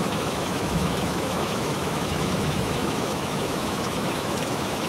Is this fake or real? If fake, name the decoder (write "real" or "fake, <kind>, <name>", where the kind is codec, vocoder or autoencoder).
fake, autoencoder, DAC-VAE